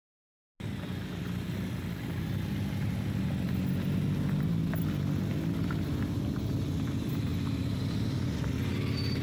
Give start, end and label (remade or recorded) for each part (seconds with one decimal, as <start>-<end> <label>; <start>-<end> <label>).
0.0-9.2 recorded